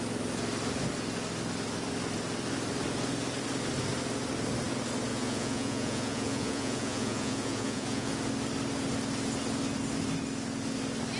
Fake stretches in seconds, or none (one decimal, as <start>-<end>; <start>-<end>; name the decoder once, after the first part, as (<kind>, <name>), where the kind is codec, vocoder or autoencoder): 5.1-8.1 (vocoder, Vocos)